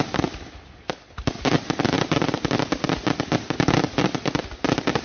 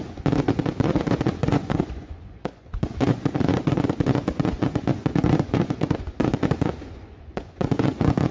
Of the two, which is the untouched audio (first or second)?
first